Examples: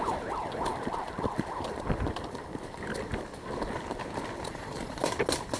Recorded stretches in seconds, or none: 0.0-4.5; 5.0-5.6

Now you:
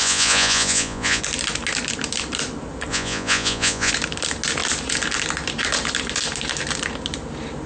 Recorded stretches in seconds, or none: 1.2-2.9; 3.9-7.7

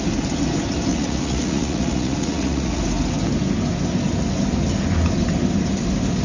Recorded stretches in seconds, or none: 0.0-0.9; 2.8-6.2

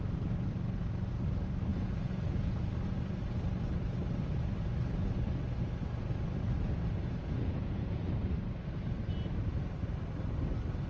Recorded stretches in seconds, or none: 0.0-1.7; 2.6-7.2; 8.1-10.9

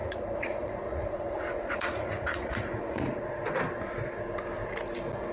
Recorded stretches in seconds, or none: 3.2-5.3

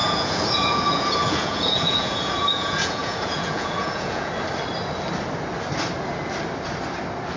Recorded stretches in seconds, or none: 4.3-7.4

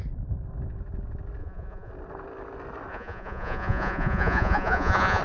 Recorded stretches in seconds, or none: 0.0-1.4; 1.9-2.9